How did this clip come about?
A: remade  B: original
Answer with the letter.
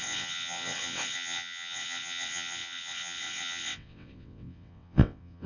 A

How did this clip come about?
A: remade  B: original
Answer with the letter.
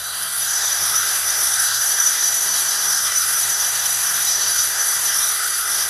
A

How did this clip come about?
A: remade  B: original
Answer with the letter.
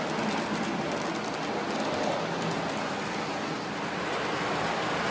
B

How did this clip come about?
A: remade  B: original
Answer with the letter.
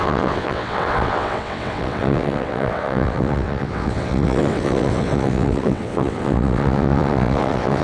A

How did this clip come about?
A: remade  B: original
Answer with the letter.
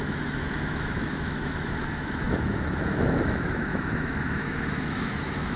A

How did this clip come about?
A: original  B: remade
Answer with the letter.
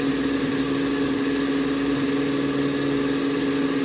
A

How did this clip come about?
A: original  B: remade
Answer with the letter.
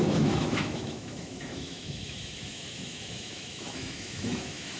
B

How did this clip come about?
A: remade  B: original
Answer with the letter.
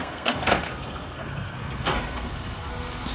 A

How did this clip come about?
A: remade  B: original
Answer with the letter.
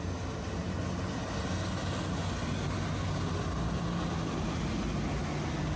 B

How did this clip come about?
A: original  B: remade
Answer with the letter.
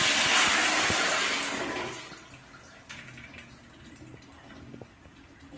A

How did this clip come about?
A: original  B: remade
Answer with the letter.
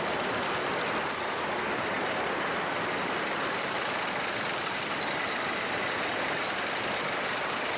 A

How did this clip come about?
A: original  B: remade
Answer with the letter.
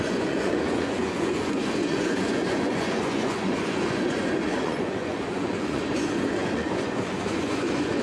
B